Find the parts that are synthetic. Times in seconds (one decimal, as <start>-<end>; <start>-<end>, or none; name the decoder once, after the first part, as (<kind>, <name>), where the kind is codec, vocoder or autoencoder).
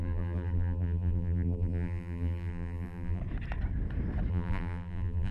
0.0-3.2 (vocoder, BigVGAN v2); 4.3-5.3